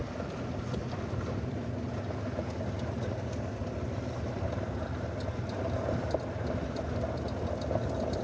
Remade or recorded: recorded